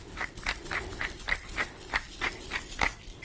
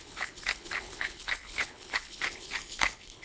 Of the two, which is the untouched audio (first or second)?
first